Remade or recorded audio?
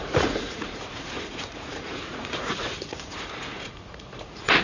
remade